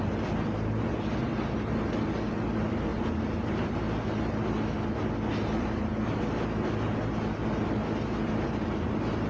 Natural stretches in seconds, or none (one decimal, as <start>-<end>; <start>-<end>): 0.0-2.9; 3.7-9.3

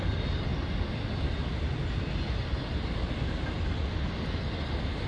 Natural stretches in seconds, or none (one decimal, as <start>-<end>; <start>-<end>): 0.0-5.1

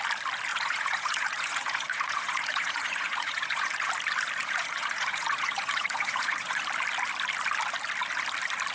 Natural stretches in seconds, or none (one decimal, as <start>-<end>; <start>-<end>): 0.0-0.5; 3.9-4.4; 6.6-8.7

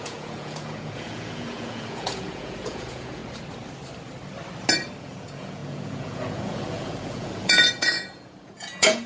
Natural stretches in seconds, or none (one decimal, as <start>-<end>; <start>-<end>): 3.2-5.0

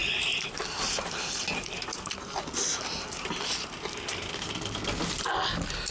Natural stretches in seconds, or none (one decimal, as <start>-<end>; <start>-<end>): 0.0-5.9

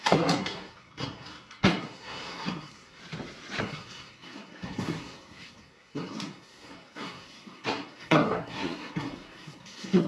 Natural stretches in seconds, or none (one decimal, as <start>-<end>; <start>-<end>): 3.0-3.6